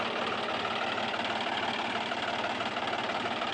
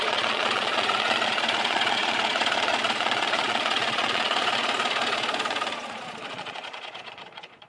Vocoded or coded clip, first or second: second